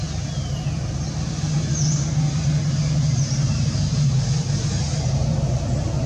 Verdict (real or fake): real